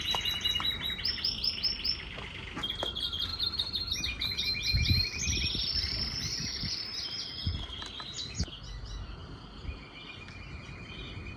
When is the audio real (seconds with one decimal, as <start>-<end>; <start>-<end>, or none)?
0.0-3.3; 4.0-11.4